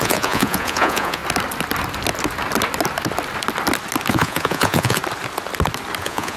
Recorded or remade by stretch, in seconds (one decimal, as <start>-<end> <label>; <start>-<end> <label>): 0.0-1.2 remade; 1.2-4.1 recorded; 4.1-5.0 remade; 5.0-6.0 recorded; 6.0-6.4 remade